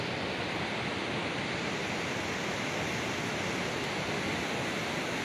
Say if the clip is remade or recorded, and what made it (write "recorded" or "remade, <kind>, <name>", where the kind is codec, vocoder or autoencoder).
recorded